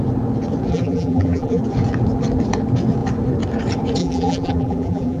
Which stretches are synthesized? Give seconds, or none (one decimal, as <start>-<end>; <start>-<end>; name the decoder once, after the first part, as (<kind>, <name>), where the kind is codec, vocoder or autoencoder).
0.7-1.6 (vocoder, BigVGAN v2); 4.0-5.2